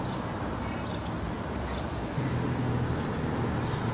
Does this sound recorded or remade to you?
recorded